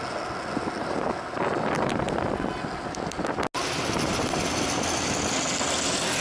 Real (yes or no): yes